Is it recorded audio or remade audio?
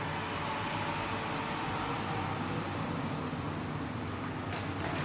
recorded